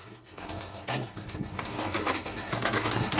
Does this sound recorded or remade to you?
remade